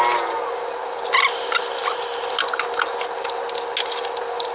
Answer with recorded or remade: recorded